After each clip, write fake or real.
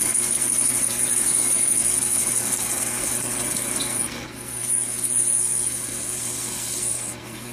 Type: fake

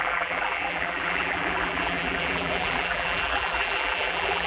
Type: fake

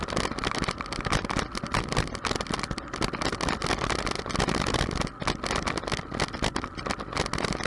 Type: real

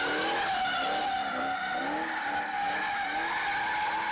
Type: real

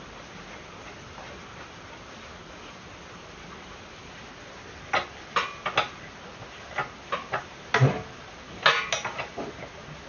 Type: real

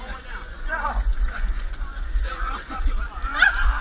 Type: fake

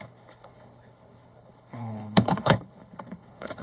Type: fake